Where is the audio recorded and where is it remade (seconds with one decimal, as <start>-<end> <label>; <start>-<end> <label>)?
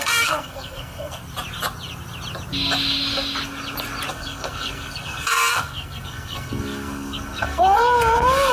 0.0-1.2 remade; 1.2-4.1 recorded; 4.1-8.5 remade